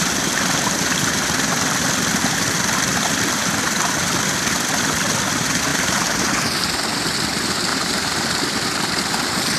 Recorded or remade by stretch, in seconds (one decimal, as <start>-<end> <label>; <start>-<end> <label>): 0.0-5.7 recorded; 5.7-6.8 remade; 6.8-7.7 recorded; 7.7-8.3 remade; 8.3-9.6 recorded